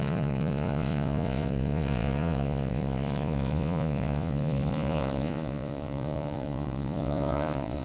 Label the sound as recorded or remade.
remade